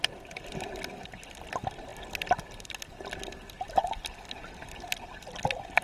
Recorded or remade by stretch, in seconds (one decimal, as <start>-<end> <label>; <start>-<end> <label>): 0.0-5.8 recorded